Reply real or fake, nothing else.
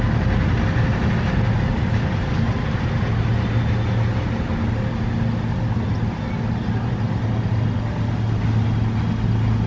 real